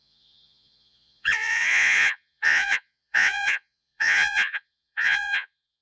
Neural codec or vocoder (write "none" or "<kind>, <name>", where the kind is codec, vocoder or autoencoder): vocoder, Vocos